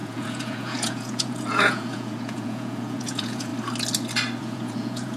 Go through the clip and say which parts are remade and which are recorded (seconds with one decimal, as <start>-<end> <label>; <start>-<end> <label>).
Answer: 0.0-3.5 remade; 3.5-4.4 recorded; 4.4-5.2 remade